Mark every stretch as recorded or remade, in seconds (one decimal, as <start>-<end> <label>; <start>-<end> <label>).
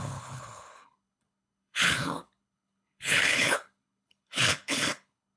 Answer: 0.0-5.4 remade